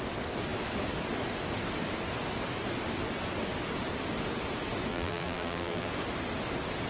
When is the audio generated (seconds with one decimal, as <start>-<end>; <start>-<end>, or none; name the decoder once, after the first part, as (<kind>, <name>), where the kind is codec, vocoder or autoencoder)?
4.9-5.9 (vocoder, BigVGAN v2)